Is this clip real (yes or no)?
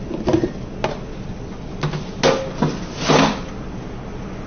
yes